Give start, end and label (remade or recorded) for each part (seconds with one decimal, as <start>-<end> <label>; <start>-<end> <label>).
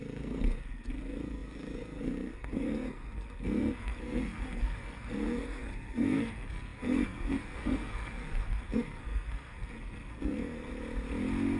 0.0-10.7 remade; 10.7-11.6 recorded